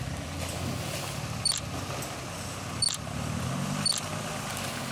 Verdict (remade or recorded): recorded